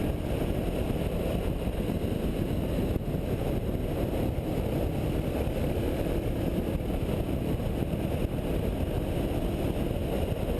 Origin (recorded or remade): recorded